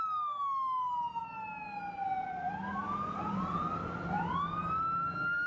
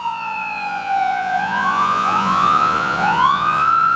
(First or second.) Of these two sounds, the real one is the first